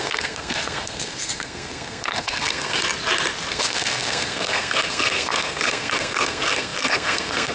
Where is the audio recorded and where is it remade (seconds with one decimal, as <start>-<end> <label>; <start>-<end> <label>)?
0.0-2.8 remade; 2.8-3.5 recorded; 3.5-7.5 remade